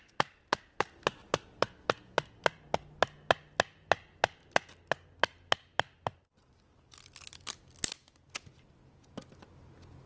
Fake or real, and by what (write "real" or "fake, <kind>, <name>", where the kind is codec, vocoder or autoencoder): real